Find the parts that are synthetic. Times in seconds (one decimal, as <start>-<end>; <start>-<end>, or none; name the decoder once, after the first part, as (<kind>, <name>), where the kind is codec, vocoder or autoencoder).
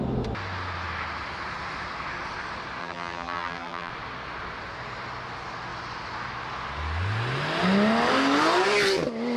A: 2.8-3.9 (vocoder, BigVGAN v2)